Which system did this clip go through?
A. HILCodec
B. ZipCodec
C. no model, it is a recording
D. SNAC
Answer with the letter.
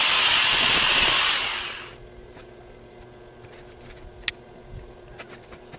C